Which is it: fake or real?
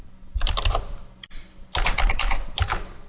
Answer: real